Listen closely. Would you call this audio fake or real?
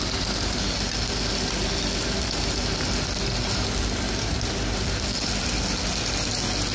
real